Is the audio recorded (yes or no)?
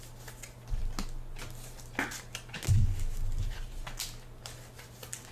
yes